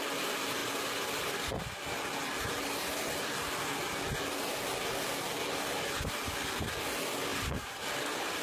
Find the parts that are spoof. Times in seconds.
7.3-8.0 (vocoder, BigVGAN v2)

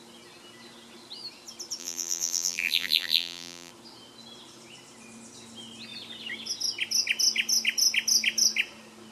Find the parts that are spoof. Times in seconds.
1.8-3.7 (vocoder, BigVGAN v2)

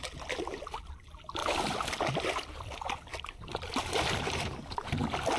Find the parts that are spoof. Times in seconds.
1.4-1.9 (vocoder, BigVGAN v2); 3.1-5.4

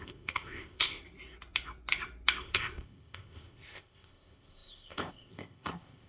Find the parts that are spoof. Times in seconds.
0.0-1.0 (codec, ZipCodec); 2.4-6.1

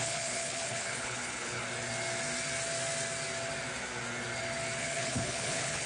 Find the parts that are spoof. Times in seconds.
0.0-1.6 (codec, HILCodec); 4.8-5.9

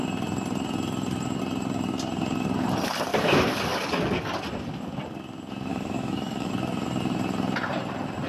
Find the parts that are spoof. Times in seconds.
3.1-4.4 (codec, DAC); 5.7-6.5